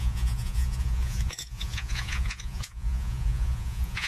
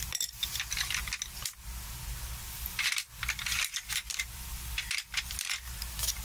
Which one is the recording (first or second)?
second